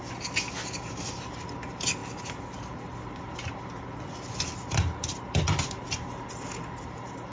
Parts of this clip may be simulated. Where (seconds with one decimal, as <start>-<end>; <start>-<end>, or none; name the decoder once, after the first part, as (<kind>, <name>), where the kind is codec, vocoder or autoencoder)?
none